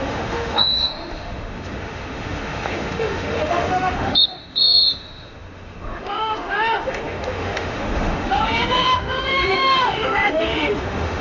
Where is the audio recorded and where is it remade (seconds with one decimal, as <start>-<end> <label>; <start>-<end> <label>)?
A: 0.0-11.2 remade